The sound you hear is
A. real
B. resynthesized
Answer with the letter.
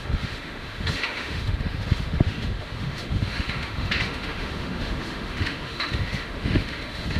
B